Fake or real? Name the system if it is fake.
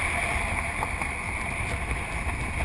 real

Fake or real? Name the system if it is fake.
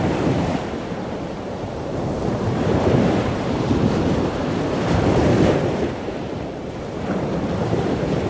fake, vocoder, BigVGAN v2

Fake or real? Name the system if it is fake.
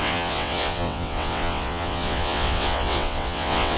fake, vocoder, WaveNeXt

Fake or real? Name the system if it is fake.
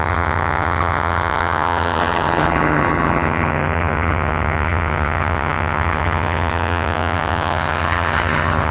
fake, vocoder, HiFi-GAN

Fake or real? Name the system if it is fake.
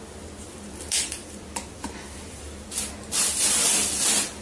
real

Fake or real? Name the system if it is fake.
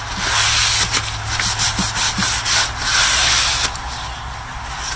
real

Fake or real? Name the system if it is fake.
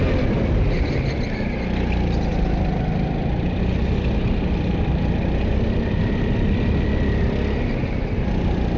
real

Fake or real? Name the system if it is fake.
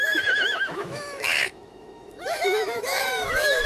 fake, autoencoder, DAC-VAE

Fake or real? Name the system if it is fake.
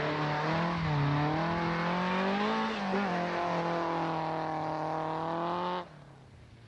real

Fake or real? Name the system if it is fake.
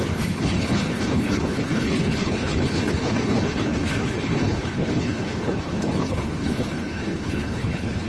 fake, codec, HILCodec